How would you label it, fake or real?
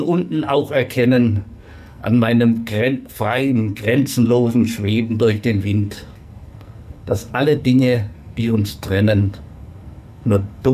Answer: fake